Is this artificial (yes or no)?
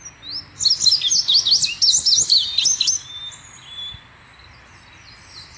no